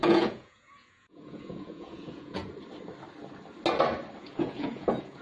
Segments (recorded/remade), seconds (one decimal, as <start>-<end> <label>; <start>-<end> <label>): 0.0-2.4 remade; 2.4-4.2 recorded; 4.2-5.2 remade